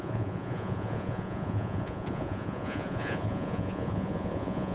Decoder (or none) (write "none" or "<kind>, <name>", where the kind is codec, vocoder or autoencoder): vocoder, Vocos